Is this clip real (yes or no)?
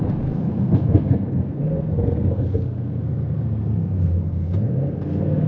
no